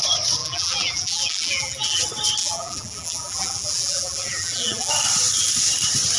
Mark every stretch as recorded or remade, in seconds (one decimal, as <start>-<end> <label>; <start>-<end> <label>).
0.0-0.4 recorded; 0.4-2.0 remade; 2.0-2.4 recorded; 2.4-4.9 remade; 4.9-6.2 recorded